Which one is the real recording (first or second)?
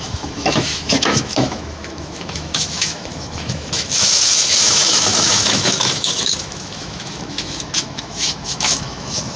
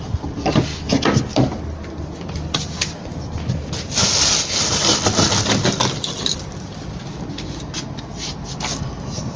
second